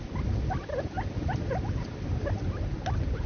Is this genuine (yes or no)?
yes